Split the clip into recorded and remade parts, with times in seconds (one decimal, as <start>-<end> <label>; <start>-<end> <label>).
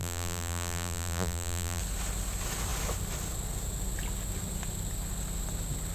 0.0-1.8 remade; 1.8-5.9 recorded